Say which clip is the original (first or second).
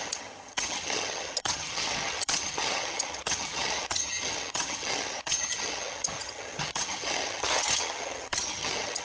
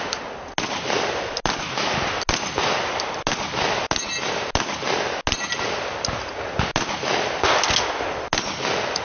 second